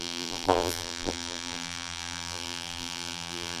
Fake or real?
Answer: fake